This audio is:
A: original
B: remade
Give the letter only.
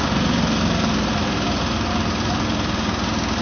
A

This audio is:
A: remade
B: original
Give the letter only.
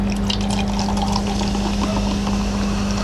B